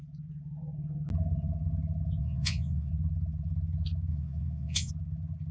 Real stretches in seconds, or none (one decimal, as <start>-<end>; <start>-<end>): 0.0-2.2; 2.9-4.1; 4.9-5.5